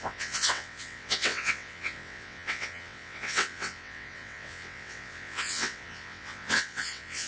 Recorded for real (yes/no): no